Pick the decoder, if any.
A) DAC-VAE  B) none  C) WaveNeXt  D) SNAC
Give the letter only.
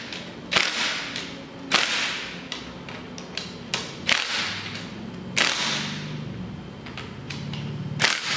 B